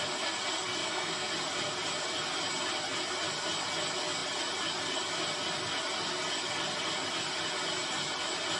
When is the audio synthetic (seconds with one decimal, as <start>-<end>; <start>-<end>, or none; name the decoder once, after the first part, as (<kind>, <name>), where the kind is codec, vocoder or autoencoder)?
0.8-1.3 (codec, SNAC)